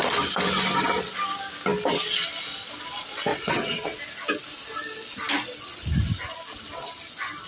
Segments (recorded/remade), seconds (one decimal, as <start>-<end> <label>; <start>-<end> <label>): 0.0-3.3 recorded; 3.3-4.0 remade; 4.0-7.5 recorded